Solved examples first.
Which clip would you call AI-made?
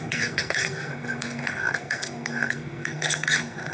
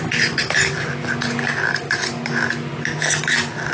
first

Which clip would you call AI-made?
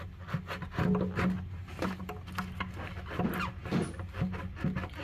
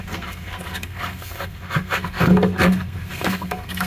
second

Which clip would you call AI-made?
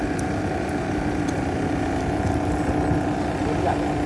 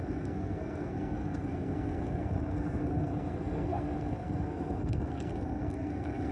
second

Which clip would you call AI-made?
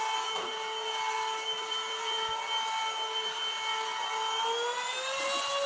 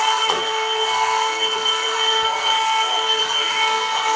second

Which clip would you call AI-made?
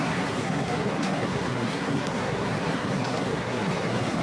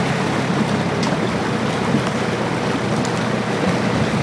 first